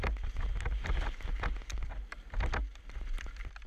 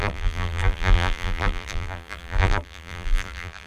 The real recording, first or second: first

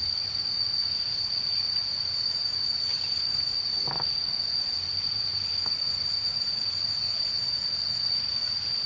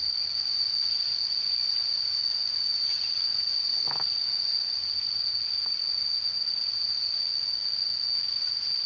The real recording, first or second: second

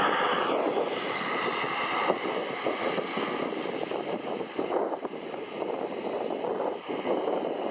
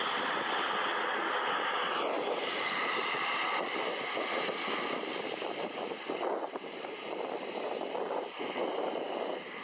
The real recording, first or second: first